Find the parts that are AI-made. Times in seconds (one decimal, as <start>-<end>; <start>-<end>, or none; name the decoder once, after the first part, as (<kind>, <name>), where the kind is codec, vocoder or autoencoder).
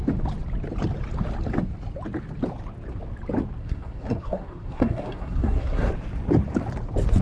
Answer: 3.6-5.9 (codec, SNAC)